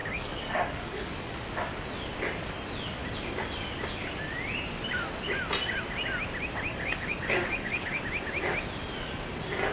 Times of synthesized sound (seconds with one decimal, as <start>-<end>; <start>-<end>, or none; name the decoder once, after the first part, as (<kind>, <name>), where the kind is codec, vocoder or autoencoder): 0.0-1.4 (codec, DAC); 6.7-8.0